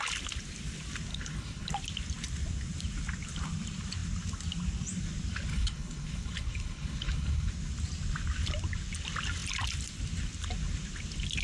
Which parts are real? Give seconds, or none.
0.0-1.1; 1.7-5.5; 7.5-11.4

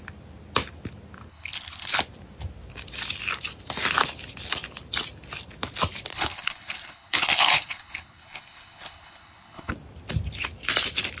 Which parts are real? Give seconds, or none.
0.0-1.3; 2.0-6.1; 9.7-11.2

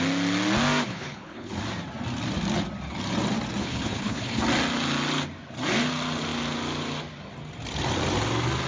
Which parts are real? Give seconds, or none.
0.0-0.9; 1.5-3.6; 4.4-8.7

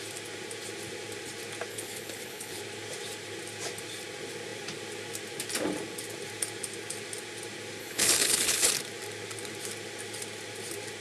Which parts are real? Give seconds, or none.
0.0-1.7; 2.6-7.8; 8.7-11.0